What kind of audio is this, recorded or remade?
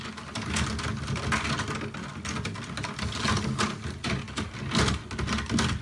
recorded